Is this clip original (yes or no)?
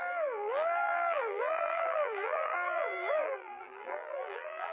no